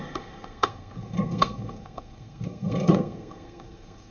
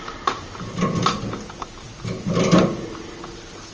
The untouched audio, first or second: second